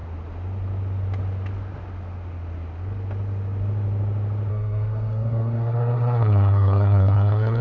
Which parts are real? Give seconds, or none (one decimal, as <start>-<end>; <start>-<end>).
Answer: 0.0-4.5